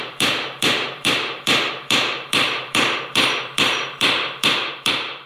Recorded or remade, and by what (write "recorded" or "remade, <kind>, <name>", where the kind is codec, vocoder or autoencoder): remade, vocoder, BigVGAN v2